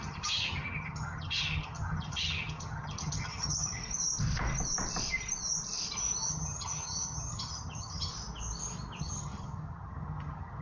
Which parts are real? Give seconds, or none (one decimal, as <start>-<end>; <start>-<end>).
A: 3.8-6.3; 8.1-9.0